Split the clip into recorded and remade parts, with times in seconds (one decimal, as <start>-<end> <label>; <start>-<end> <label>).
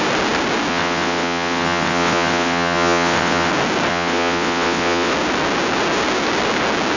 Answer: 0.0-0.7 recorded; 0.7-3.5 remade; 3.5-3.9 recorded; 3.9-5.1 remade; 5.1-7.0 recorded